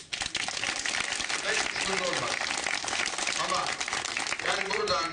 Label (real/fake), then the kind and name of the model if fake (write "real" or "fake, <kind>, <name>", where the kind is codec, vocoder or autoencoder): real